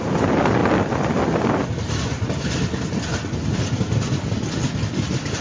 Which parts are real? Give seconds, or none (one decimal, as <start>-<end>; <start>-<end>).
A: 0.0-5.4